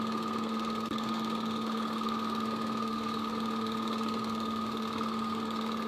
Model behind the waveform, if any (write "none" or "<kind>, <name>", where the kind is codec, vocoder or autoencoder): codec, SNAC